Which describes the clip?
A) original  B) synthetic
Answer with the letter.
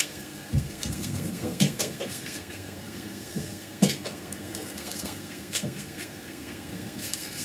B